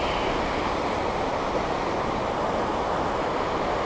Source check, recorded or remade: recorded